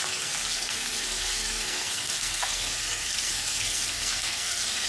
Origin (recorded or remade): remade